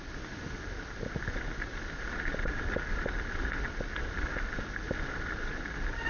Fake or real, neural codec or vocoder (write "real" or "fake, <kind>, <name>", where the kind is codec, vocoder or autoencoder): real